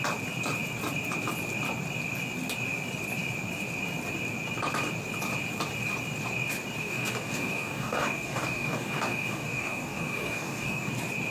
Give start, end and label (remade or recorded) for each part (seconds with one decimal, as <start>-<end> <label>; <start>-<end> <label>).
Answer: 0.0-6.8 recorded; 6.8-10.9 remade; 10.9-11.3 recorded